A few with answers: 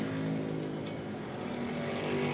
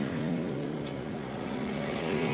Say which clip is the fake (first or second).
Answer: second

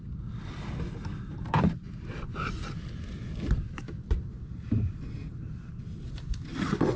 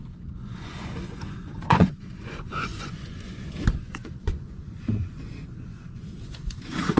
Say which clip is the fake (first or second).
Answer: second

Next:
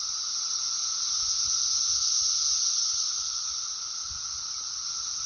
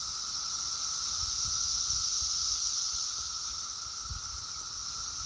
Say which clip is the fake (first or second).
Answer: first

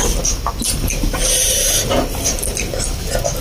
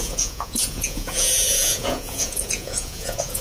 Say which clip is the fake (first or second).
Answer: second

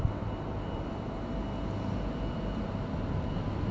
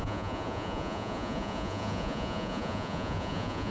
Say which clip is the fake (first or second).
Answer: second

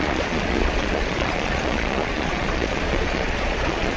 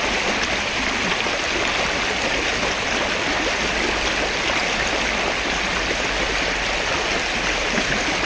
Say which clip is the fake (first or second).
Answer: first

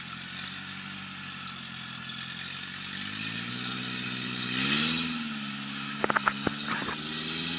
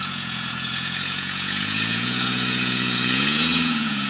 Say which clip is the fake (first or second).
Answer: second